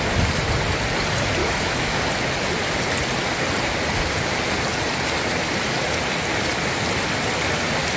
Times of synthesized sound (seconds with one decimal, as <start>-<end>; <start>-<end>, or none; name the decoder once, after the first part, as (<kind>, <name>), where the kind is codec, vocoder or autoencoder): 1.4-2.0 (autoencoder, DAC-VAE)